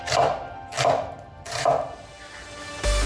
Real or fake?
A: real